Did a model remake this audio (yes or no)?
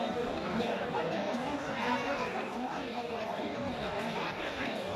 yes